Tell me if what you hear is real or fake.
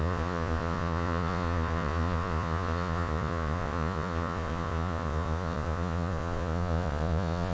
fake